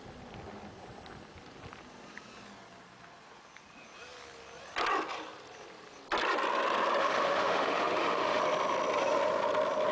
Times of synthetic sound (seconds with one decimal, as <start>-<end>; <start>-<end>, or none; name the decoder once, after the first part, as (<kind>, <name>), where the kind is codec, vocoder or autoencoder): 7.0-8.4 (autoencoder, DAC-VAE)